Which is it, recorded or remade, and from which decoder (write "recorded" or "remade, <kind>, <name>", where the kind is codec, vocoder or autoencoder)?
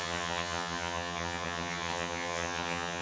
remade, vocoder, HiFi-GAN